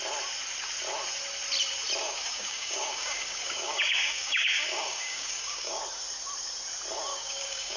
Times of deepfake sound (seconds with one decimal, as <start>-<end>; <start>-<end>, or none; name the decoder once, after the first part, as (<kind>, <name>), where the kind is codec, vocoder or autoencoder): 2.0-5.8 (codec, DAC); 7.1-7.8